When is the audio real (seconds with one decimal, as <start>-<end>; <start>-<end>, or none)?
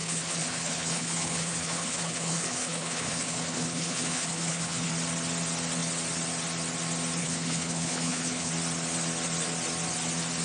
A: 4.9-7.2; 8.5-10.4